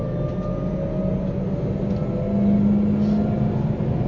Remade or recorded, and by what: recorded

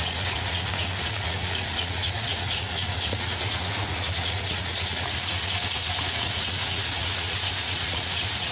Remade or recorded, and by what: remade, vocoder, Vocos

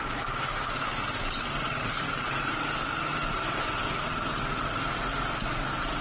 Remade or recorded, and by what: recorded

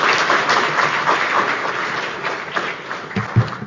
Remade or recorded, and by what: recorded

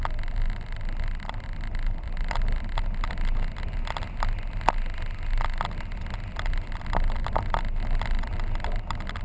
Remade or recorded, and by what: recorded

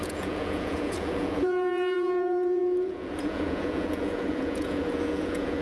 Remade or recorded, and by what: remade, vocoder, Vocos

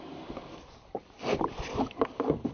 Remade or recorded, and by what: recorded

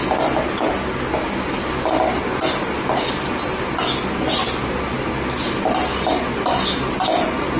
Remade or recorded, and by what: recorded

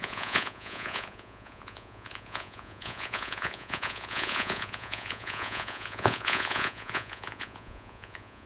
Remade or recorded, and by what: remade, vocoder, Vocos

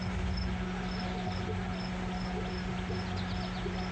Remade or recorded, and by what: recorded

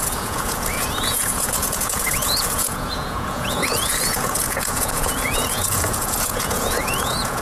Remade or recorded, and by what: remade, vocoder, Vocos